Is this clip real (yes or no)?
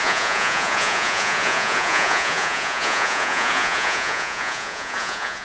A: no